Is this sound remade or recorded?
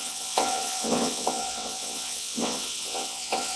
remade